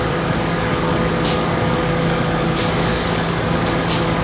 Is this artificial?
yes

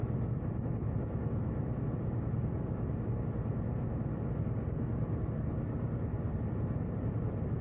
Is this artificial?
no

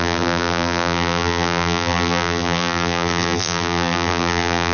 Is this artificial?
yes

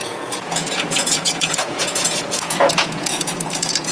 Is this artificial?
yes